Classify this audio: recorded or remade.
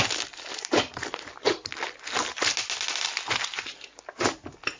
recorded